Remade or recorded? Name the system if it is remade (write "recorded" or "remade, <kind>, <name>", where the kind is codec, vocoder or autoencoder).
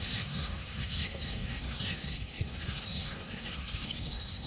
remade, codec, SNAC